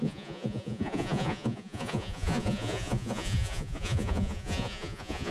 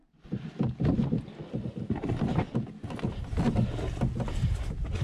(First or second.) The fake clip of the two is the first